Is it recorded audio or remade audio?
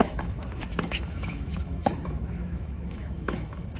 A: remade